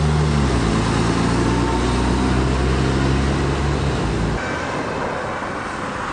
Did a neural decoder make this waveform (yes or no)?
no